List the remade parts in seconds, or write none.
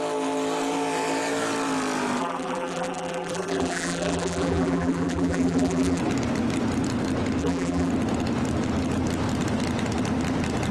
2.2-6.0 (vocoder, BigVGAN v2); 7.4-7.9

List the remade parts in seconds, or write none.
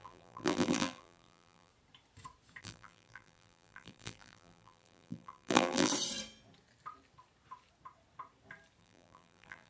0.0-1.7 (vocoder, BigVGAN v2); 2.6-5.9; 8.8-9.7